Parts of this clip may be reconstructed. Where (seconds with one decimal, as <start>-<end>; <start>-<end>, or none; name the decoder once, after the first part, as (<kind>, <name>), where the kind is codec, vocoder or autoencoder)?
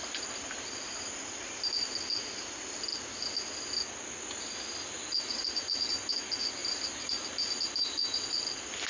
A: none